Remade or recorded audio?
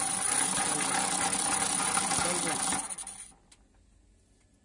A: recorded